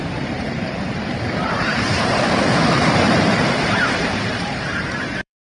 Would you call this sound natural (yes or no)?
no